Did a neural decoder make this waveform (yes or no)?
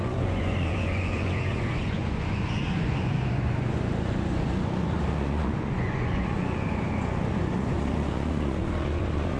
yes